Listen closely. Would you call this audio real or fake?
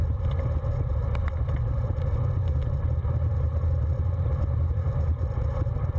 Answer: real